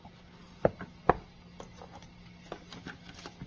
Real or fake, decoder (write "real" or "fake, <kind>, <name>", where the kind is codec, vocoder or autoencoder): real